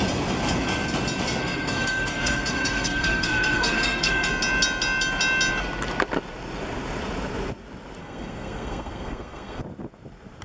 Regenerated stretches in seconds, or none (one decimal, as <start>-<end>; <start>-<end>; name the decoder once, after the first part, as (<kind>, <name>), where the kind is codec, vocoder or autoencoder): 1.4-4.3 (codec, SNAC); 8.0-9.6